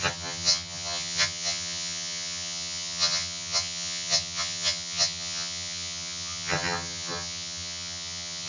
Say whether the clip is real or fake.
fake